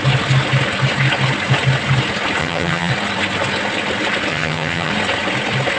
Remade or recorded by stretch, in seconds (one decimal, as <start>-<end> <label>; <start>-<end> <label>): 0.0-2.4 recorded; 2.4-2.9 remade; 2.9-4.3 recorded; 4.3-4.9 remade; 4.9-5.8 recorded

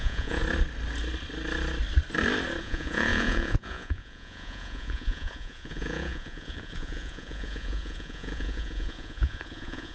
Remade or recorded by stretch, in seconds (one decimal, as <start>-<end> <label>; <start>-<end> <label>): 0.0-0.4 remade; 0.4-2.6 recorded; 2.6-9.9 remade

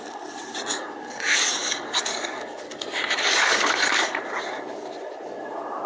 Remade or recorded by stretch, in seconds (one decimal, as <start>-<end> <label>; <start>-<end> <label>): 0.0-0.7 recorded; 0.7-4.2 remade; 4.2-5.9 recorded